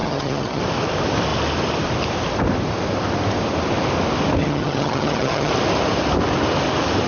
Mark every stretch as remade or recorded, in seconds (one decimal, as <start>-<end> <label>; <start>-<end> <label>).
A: 0.0-0.6 remade; 0.6-4.4 recorded; 4.4-5.5 remade; 5.5-7.1 recorded